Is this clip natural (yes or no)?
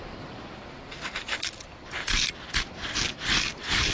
yes